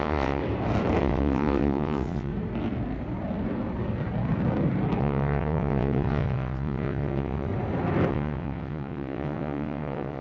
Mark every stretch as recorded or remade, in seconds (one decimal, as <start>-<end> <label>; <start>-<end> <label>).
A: 0.0-0.4 remade; 0.4-1.0 recorded; 1.0-2.3 remade; 2.3-5.0 recorded; 5.0-7.5 remade; 7.5-8.1 recorded; 8.1-10.2 remade